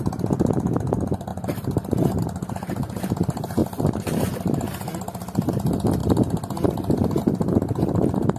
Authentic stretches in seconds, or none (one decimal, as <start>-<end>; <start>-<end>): 0.0-1.3; 2.2-8.4

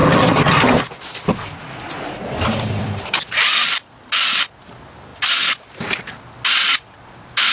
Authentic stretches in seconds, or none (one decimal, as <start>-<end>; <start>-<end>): 4.5-7.5

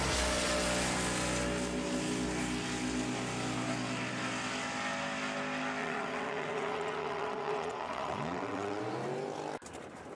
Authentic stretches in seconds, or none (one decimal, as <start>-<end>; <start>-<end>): 0.0-5.8; 8.8-10.1

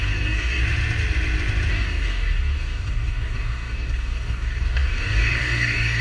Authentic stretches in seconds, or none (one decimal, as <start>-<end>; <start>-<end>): 0.6-1.7